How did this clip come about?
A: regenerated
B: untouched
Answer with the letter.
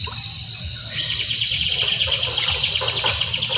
B